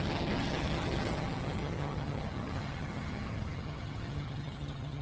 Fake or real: fake